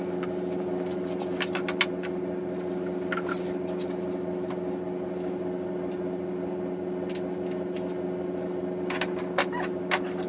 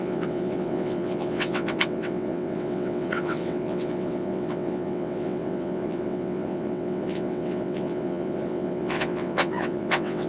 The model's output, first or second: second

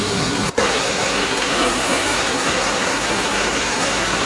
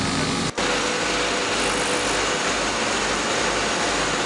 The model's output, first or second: first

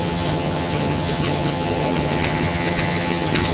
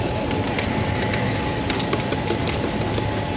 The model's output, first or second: first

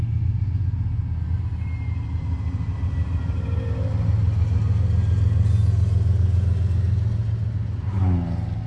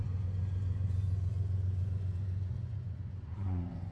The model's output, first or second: second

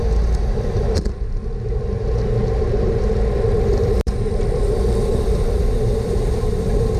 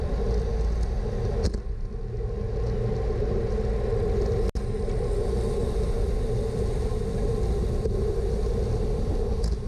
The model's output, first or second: first